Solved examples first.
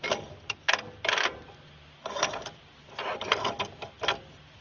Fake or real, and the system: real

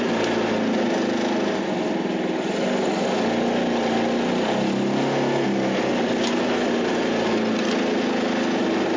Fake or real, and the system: real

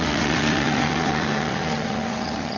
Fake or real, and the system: fake, vocoder, WaveNeXt